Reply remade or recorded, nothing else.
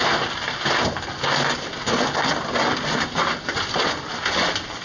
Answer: recorded